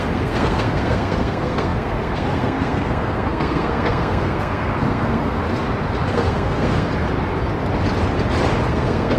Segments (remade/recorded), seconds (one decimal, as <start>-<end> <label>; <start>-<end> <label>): 0.0-5.4 remade; 5.4-6.1 recorded; 6.1-6.9 remade; 6.9-8.7 recorded; 8.7-9.2 remade